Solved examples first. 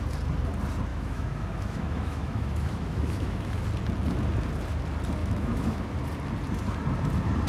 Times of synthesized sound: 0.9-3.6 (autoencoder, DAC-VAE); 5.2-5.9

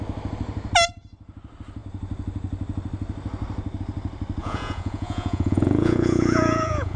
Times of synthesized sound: 4.4-7.0 (vocoder, Vocos)